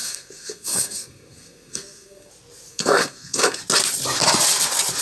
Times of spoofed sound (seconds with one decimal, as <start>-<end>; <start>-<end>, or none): 0.0-2.3; 2.7-3.6